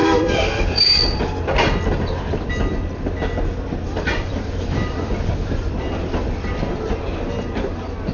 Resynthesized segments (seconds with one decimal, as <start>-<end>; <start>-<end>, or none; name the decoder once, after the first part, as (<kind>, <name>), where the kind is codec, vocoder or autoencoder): 0.0-1.2 (vocoder, BigVGAN v2); 3.9-6.8